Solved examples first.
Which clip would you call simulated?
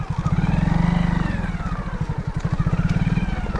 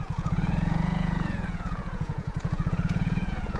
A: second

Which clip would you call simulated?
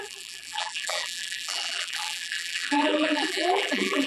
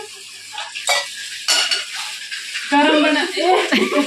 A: first